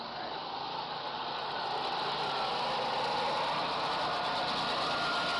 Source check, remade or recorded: recorded